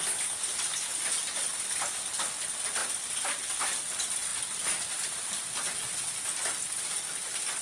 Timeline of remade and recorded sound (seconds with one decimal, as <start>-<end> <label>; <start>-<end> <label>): 0.0-1.5 recorded; 1.5-2.1 remade; 2.1-2.8 recorded; 2.8-3.8 remade; 3.8-4.3 recorded; 4.3-6.0 remade; 6.0-7.6 recorded